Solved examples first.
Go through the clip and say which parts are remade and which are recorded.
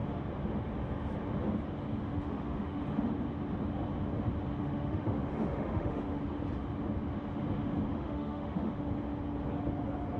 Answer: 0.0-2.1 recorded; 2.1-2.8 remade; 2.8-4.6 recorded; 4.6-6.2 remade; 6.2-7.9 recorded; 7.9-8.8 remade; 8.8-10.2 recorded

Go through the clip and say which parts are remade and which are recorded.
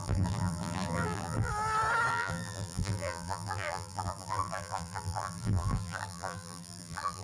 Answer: 0.0-1.5 remade; 1.5-2.1 recorded; 2.1-7.2 remade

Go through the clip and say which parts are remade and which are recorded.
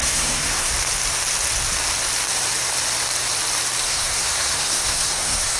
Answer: 0.0-0.7 remade; 0.7-3.9 recorded; 3.9-5.6 remade